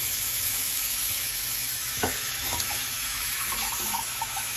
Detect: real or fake fake